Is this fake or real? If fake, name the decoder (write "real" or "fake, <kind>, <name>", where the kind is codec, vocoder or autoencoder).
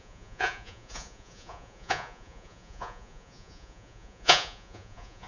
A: fake, vocoder, Vocos